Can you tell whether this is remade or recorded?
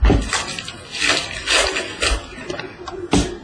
recorded